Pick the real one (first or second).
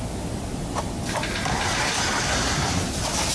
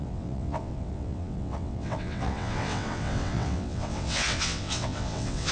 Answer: first